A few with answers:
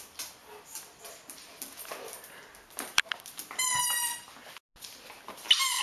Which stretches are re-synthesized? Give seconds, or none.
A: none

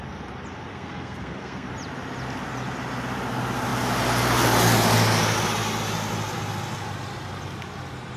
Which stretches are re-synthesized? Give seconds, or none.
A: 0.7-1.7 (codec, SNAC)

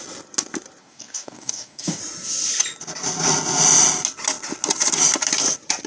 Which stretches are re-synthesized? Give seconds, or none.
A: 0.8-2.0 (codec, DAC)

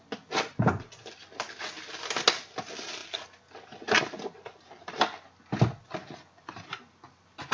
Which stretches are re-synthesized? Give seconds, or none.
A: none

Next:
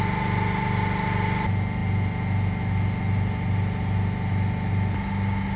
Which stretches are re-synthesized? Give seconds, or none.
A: none

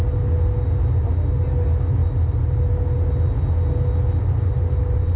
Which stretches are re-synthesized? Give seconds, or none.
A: none

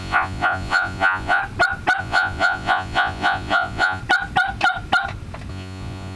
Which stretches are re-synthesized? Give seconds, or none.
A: 0.0-1.4 (vocoder, Vocos); 2.0-4.0; 5.5-6.2

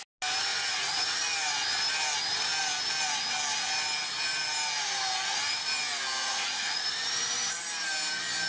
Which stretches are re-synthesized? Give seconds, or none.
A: 0.5-1.2 (vocoder, Vocos); 6.2-6.9